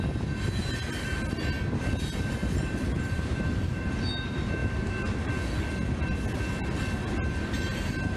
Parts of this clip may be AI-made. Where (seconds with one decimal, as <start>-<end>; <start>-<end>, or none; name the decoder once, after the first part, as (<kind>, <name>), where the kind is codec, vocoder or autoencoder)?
2.4-3.9 (vocoder, BigVGAN v2); 4.6-5.3